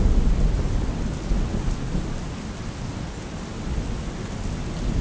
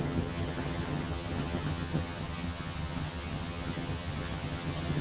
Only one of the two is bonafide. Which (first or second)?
first